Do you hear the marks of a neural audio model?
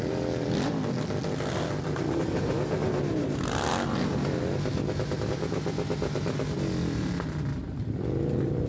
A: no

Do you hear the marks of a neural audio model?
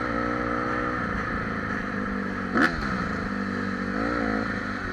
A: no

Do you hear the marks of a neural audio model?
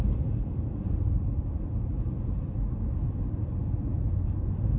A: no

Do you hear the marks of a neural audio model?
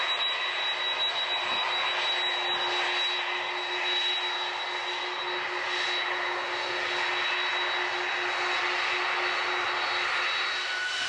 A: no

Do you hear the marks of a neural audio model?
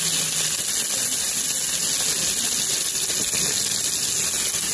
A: no